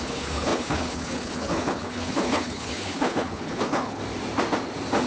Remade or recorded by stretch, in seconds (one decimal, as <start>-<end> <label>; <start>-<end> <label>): 0.0-4.0 remade; 4.0-5.1 recorded